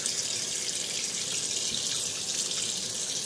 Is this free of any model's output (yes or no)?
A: yes